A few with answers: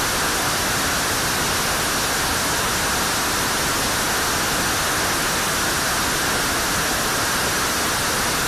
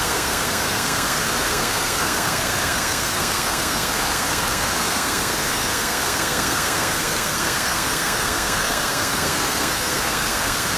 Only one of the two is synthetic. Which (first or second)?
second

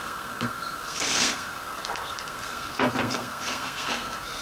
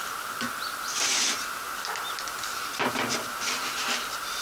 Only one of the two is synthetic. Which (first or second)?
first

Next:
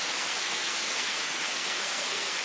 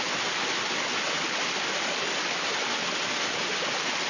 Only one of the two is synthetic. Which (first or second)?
first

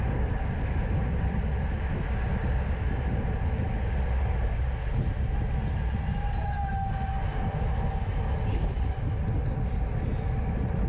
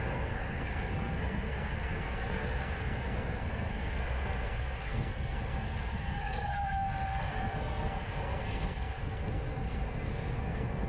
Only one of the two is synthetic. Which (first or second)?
second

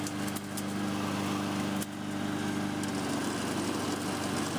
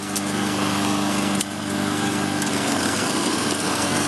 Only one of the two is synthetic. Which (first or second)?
second